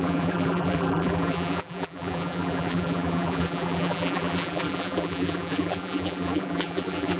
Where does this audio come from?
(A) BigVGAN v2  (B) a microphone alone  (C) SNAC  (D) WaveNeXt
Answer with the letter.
A